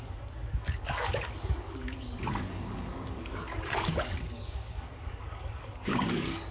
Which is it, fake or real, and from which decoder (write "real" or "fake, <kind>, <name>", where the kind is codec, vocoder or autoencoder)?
fake, codec, DAC